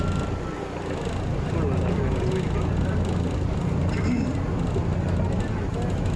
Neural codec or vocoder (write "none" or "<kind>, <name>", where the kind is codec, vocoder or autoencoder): none